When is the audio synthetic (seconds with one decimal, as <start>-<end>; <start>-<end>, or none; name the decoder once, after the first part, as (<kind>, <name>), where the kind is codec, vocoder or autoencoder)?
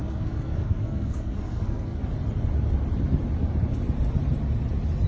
0.0-2.0 (codec, SNAC)